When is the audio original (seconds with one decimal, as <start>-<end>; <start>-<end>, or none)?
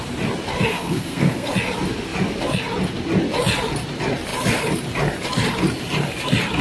0.0-0.7; 1.5-6.6